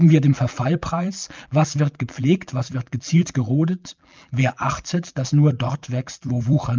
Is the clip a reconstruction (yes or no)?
yes